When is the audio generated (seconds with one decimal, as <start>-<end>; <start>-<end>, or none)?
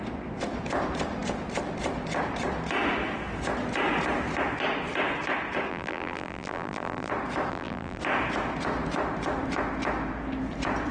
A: 5.7-7.1; 7.5-8.0